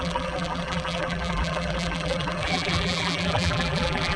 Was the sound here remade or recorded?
remade